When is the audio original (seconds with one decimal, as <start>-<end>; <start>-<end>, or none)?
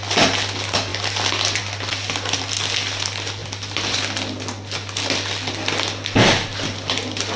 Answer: 0.0-7.4